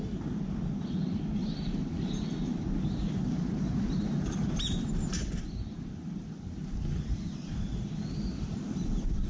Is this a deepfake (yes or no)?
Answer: no